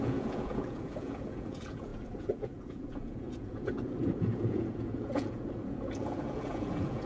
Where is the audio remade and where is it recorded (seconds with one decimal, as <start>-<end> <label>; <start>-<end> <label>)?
0.0-7.1 remade